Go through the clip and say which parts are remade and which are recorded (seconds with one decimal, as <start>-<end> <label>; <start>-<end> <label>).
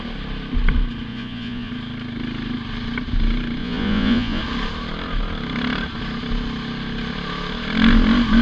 0.0-1.1 recorded; 1.1-1.7 remade; 1.7-3.6 recorded; 3.6-4.4 remade; 4.4-8.4 recorded